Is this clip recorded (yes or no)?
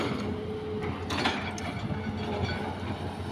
yes